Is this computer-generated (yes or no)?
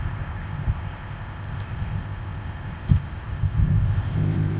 yes